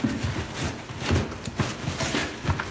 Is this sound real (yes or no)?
yes